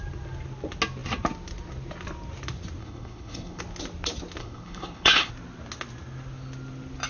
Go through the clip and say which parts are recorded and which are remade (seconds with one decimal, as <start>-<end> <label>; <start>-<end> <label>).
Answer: 0.0-2.8 recorded; 2.8-3.6 remade; 3.6-4.4 recorded; 4.4-5.3 remade; 5.3-7.1 recorded